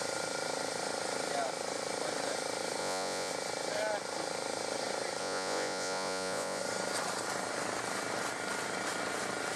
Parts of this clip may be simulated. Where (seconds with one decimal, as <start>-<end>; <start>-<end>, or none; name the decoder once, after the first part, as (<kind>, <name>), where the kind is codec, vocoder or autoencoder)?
2.8-3.3 (vocoder, Vocos); 5.2-6.6